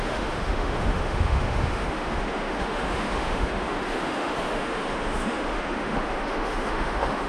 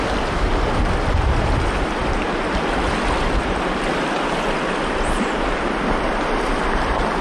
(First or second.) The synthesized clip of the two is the first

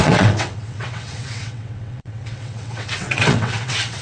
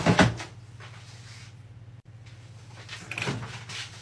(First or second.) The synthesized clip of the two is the first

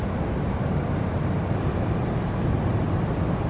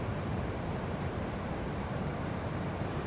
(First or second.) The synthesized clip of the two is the second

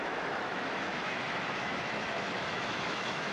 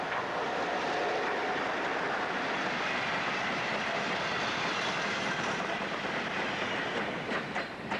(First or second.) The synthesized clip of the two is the first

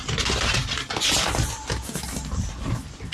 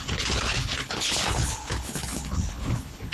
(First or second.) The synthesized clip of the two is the second